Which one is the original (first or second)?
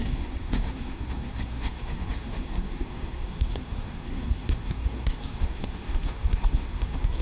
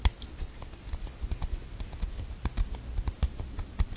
second